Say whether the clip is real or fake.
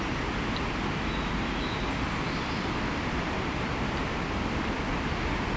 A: real